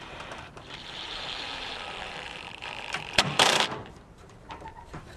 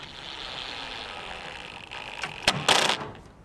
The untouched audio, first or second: second